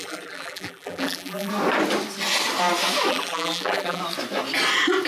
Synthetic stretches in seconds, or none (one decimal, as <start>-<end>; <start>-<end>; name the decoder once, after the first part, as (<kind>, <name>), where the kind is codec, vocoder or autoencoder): 0.0-1.5 (vocoder, BigVGAN v2); 3.1-4.0